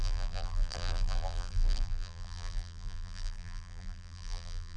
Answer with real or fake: fake